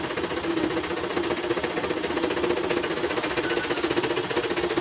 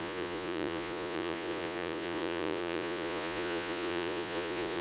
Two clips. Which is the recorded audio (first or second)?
first